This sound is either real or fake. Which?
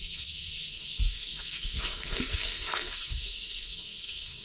fake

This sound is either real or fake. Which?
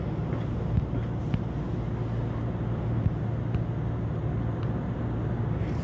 real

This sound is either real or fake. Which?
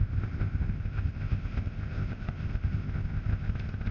fake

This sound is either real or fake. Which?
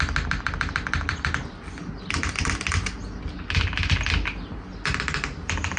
real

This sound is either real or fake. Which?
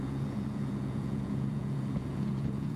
fake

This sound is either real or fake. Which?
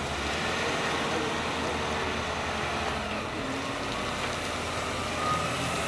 real